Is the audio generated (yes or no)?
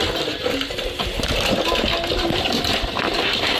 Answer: no